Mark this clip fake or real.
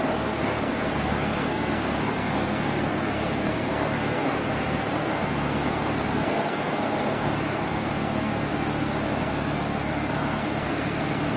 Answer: fake